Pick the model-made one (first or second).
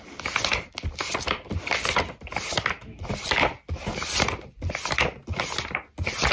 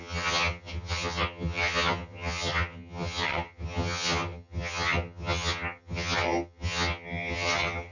second